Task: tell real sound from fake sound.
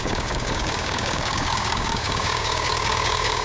fake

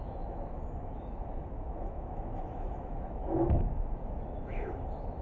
fake